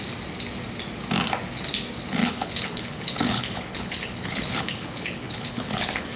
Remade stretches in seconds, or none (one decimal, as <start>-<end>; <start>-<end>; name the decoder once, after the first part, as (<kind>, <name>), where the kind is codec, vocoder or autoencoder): 2.2-6.2 (codec, HILCodec)